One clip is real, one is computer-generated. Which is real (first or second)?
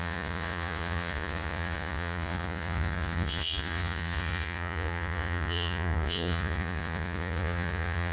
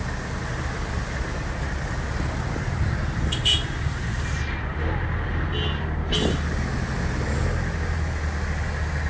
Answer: second